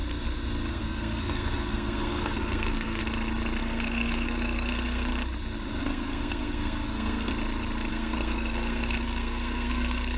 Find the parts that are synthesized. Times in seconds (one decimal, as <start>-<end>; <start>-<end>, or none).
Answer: 0.7-3.0; 3.6-5.1; 5.8-7.3; 7.9-10.2